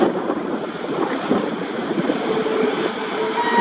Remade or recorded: recorded